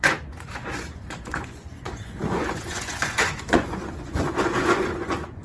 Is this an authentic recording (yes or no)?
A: no